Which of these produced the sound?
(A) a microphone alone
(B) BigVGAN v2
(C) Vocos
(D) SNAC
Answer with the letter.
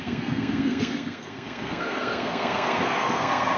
D